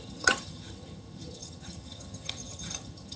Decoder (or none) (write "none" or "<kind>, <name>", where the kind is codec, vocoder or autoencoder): vocoder, HiFi-GAN